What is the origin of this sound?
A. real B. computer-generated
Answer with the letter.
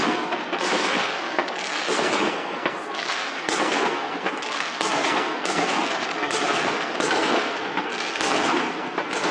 B